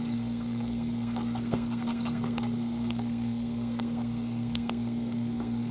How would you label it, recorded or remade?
remade